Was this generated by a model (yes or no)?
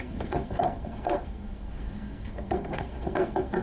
yes